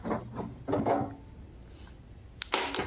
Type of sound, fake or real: real